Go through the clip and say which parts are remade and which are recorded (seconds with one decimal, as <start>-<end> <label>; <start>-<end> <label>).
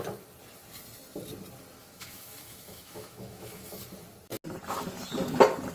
0.0-1.8 recorded; 1.8-3.9 remade; 3.9-5.7 recorded